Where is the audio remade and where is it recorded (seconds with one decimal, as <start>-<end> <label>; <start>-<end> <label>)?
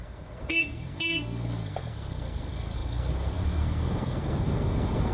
0.0-5.1 remade